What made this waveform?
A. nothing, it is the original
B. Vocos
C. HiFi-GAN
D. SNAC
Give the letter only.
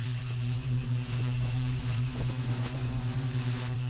B